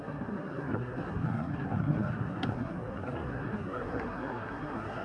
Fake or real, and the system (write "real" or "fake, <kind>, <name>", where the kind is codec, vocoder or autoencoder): fake, codec, SNAC